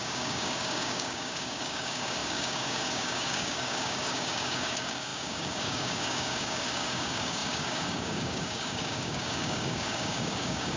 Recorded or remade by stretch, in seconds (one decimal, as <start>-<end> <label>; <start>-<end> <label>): 0.0-10.8 remade